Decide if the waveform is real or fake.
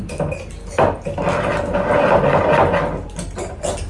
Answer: real